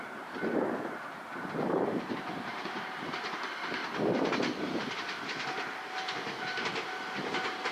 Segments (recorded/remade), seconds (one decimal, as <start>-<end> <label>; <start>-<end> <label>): 0.0-3.8 remade; 3.8-4.6 recorded; 4.6-7.7 remade